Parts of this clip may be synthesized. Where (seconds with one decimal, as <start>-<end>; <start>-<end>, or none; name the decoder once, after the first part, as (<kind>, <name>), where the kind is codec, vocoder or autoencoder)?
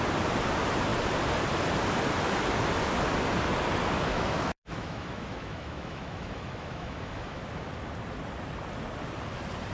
4.1-7.4 (autoencoder, DAC-VAE)